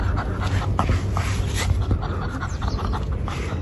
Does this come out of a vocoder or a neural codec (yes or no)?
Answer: no